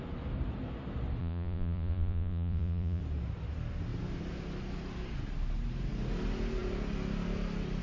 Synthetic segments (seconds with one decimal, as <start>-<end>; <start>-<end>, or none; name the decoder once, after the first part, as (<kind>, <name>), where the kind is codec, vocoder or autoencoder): 1.2-3.0 (vocoder, Vocos)